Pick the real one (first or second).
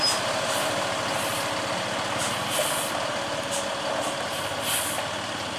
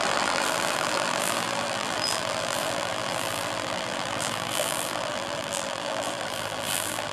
first